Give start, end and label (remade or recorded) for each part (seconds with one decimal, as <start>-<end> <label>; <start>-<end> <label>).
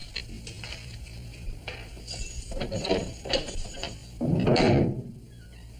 0.0-0.6 recorded; 0.6-5.8 remade